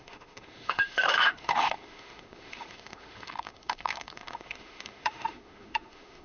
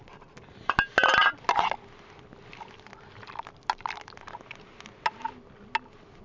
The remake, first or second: first